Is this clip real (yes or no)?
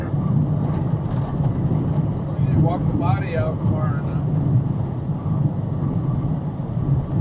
yes